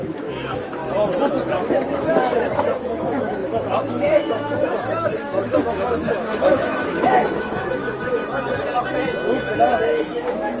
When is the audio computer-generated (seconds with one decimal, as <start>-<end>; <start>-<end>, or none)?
0.0-0.8; 1.5-8.2; 10.0-10.6